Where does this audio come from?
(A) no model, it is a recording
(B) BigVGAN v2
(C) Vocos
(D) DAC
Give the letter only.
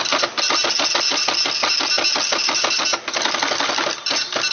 A